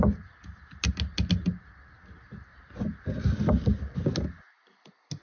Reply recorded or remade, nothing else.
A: recorded